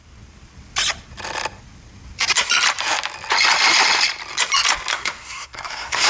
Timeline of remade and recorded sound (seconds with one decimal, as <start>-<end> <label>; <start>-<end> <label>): 0.0-4.9 recorded; 4.9-6.1 remade